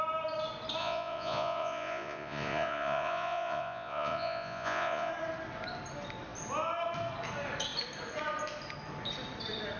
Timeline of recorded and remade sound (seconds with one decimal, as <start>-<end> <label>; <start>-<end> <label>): 0.0-0.8 recorded; 0.8-5.1 remade; 5.1-9.8 recorded